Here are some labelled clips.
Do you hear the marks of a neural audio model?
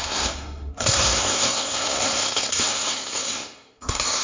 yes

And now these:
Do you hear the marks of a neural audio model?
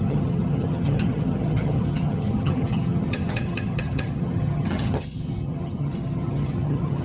yes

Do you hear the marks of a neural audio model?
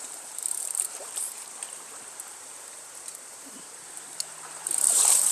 yes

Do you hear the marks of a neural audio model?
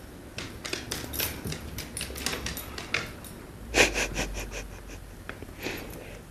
no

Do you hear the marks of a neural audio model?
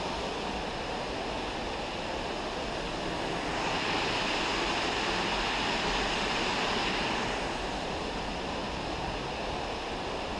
no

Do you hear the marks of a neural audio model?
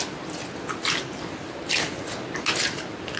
no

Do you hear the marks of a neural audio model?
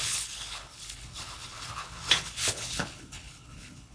yes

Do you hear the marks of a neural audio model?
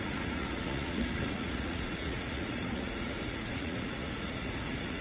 yes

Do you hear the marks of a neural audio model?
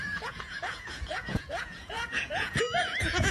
yes